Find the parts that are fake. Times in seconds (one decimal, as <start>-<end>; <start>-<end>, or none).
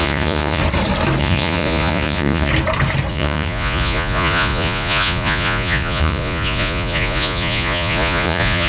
0.0-0.6; 1.2-2.5; 3.1-8.7